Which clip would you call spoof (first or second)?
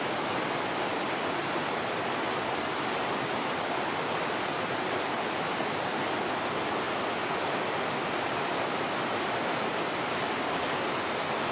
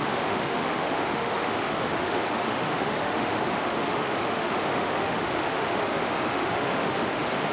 second